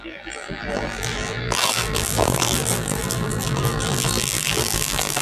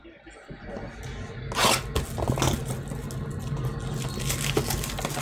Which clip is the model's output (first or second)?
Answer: first